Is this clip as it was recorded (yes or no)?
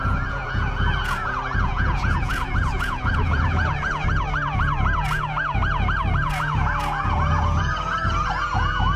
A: no